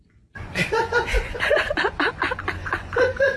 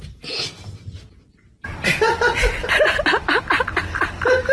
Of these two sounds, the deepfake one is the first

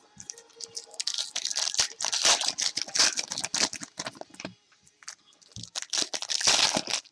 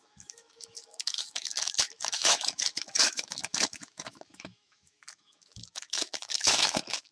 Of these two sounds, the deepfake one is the second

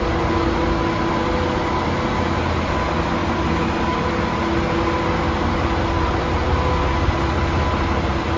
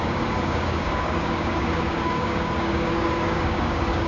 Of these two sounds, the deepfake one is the second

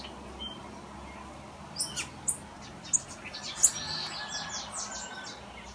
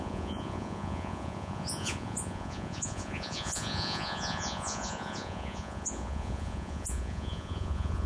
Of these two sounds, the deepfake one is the second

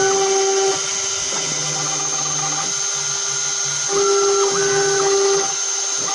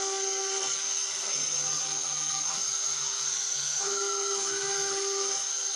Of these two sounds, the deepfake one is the second